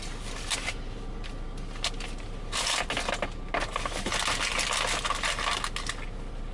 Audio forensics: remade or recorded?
recorded